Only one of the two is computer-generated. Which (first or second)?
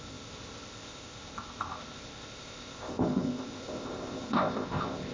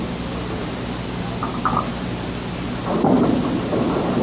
first